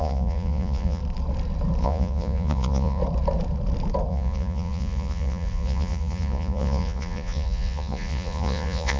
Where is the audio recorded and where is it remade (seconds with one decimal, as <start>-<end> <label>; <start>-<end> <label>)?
0.0-1.0 remade; 1.0-1.8 recorded; 1.8-3.0 remade; 3.0-4.1 recorded; 4.1-9.0 remade